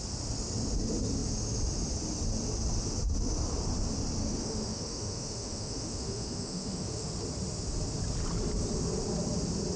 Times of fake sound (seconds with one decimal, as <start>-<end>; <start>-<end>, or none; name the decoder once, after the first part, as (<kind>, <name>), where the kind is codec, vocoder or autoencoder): 4.2-7.1 (autoencoder, DAC-VAE)